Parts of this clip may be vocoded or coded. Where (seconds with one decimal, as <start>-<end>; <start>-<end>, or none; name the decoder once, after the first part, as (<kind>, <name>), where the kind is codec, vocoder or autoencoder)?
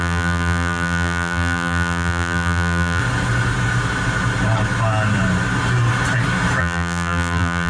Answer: 0.0-3.0 (vocoder, BigVGAN v2); 6.6-7.7